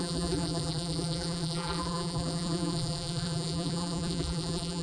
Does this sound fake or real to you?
fake